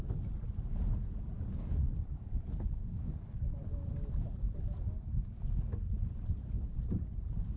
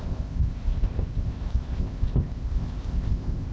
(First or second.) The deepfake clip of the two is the second